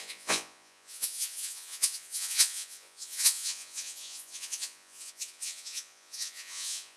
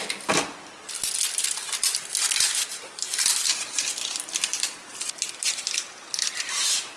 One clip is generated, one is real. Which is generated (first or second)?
first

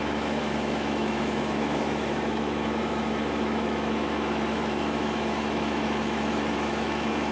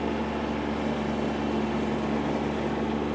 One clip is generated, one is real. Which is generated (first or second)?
first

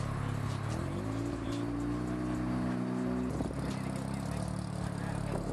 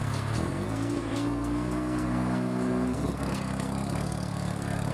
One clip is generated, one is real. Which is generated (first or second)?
second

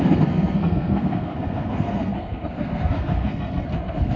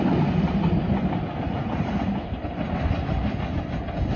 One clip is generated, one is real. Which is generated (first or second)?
first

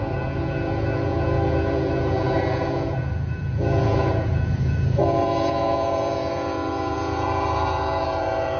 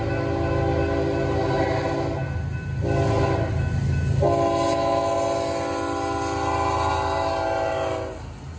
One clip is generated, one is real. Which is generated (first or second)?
first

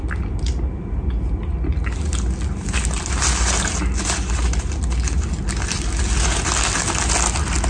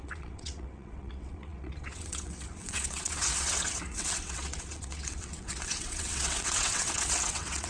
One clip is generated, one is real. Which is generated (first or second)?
second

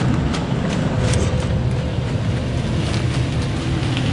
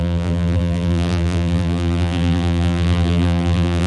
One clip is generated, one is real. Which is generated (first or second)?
second